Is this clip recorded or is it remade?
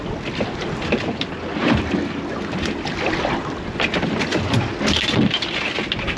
recorded